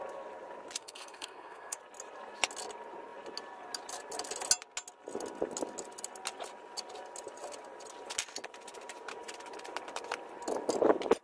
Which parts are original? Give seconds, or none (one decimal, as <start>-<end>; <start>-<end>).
0.0-0.8; 1.8-11.2